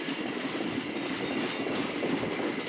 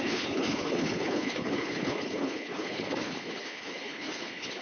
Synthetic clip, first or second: second